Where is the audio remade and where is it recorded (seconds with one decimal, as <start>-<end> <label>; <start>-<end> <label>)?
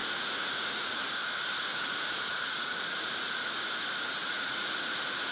0.0-1.0 remade; 1.0-1.7 recorded; 1.7-3.5 remade; 3.5-4.2 recorded; 4.2-5.3 remade